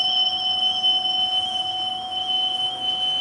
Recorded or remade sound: remade